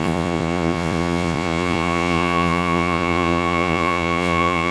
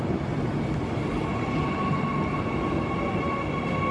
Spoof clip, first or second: first